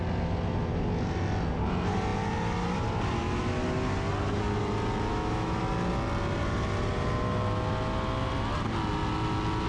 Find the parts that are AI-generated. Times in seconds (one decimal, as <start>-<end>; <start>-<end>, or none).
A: 5.1-5.6